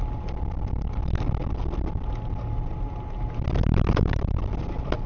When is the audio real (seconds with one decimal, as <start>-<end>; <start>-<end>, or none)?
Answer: 0.0-5.1